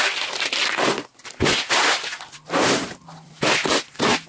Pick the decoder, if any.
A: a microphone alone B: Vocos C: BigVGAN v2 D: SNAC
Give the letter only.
A